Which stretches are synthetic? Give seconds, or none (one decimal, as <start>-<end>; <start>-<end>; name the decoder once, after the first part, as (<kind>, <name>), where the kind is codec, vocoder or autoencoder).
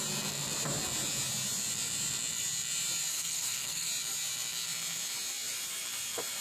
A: 3.1-3.9 (codec, SNAC)